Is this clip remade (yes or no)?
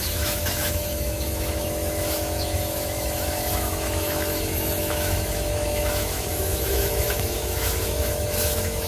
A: yes